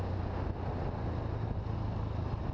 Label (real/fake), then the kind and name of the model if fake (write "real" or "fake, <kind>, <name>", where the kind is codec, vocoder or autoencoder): real